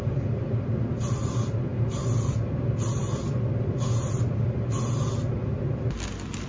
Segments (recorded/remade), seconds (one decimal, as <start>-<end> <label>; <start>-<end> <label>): 0.0-6.5 recorded